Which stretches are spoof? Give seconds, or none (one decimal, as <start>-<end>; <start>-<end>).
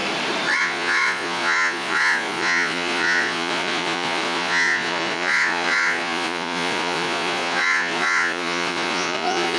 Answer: 0.6-9.6